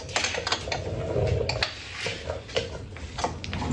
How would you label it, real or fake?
real